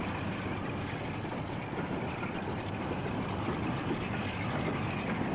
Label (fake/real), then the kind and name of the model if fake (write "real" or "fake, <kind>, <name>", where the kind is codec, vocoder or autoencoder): real